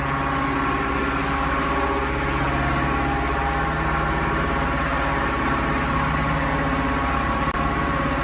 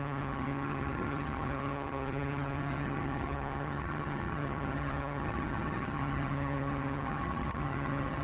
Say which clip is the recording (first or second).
first